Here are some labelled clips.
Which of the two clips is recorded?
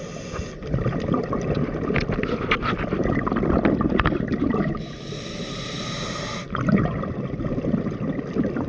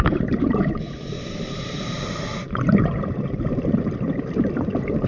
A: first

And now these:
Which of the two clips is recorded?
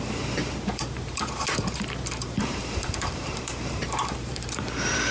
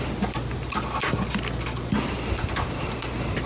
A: second